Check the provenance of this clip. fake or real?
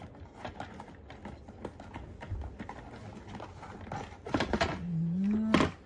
real